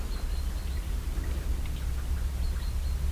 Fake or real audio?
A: real